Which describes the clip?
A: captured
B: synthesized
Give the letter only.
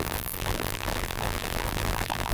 B